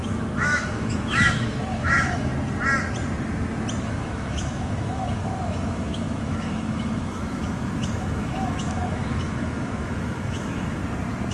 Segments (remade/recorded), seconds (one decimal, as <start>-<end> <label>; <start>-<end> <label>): 0.0-2.3 remade; 2.3-3.8 recorded; 3.8-10.8 remade; 10.8-11.3 recorded